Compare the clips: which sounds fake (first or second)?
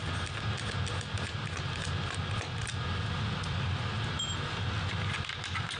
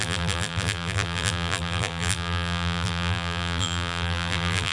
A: second